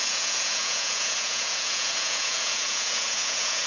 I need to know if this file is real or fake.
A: fake